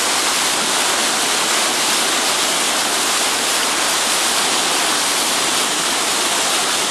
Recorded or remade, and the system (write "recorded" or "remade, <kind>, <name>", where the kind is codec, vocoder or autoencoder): recorded